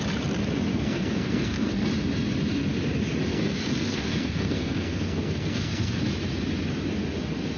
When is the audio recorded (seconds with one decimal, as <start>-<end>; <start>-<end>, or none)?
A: 0.0-0.7; 1.9-3.3; 6.0-7.6